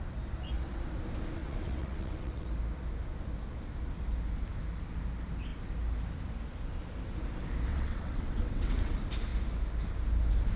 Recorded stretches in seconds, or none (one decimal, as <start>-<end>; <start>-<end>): 0.0-1.4; 2.5-7.7; 8.9-10.6